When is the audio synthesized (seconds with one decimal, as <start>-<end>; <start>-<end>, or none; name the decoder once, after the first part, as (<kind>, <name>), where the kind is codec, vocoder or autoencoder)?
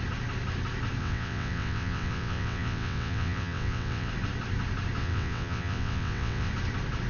1.0-4.1 (vocoder, WaveNeXt); 5.0-6.5